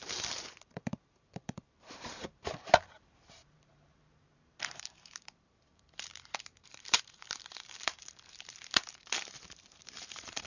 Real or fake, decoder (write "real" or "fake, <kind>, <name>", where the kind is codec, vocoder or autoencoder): fake, vocoder, BigVGAN v2